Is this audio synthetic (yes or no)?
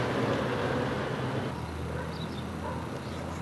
no